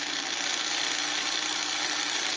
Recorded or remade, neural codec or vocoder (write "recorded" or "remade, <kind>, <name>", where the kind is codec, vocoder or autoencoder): recorded